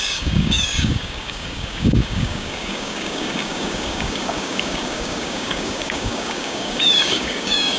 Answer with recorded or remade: remade